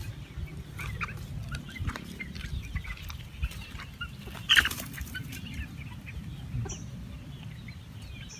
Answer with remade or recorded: remade